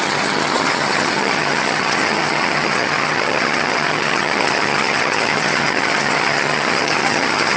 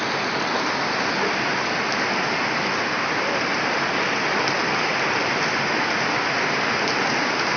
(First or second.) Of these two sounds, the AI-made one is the first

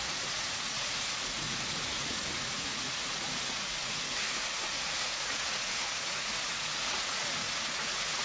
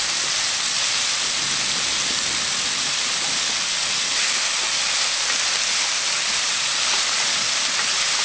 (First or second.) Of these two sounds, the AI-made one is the first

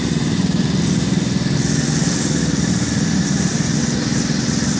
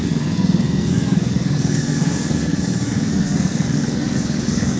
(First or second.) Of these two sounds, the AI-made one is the second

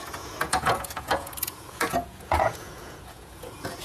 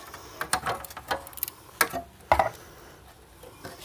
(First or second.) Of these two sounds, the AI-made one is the first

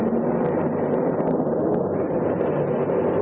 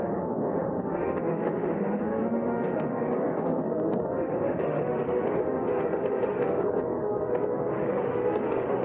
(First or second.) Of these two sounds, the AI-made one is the second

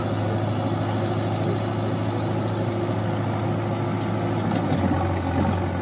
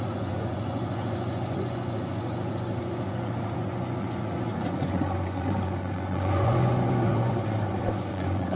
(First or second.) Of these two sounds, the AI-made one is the second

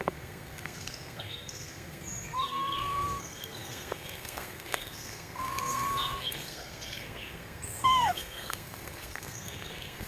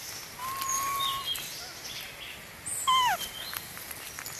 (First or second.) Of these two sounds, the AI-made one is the first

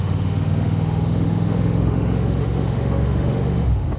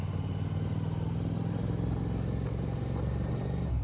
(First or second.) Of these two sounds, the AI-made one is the first